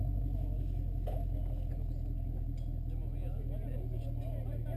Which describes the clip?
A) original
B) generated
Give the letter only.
A